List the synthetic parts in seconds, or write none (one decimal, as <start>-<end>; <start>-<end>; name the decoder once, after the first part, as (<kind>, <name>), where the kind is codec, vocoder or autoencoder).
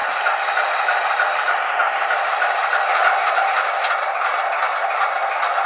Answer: none